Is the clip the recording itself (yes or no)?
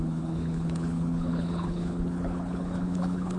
no